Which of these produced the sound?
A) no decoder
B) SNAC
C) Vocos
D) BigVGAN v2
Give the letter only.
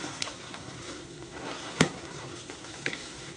B